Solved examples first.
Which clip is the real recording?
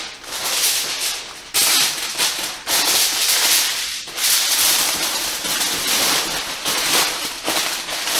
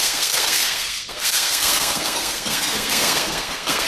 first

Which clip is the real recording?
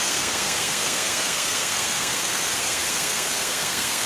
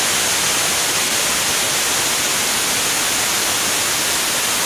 second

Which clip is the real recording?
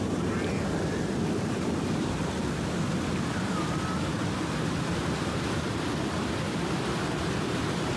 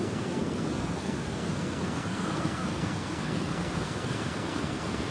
first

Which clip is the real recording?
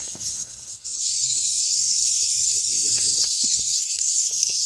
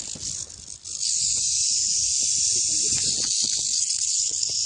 second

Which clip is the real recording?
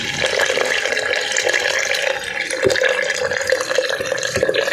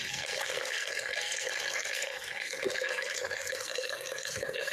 first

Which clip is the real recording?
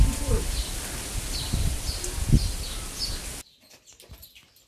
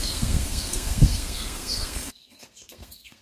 first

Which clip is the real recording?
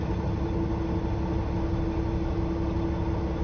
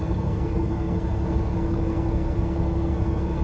first